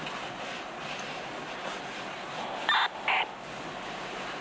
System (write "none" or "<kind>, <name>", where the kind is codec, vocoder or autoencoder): none